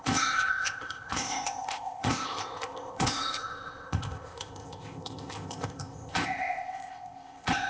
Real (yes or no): no